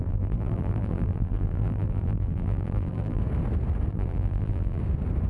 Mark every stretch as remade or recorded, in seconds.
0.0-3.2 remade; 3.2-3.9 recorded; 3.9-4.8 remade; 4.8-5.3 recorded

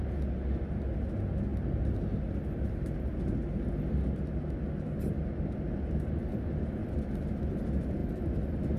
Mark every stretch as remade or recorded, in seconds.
0.0-8.8 recorded